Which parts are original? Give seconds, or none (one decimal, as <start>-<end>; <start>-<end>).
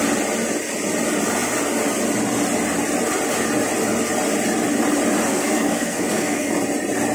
0.0-5.3; 6.5-7.1